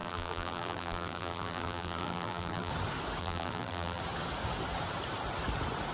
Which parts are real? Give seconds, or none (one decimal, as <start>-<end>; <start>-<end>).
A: 2.7-3.2; 4.0-5.9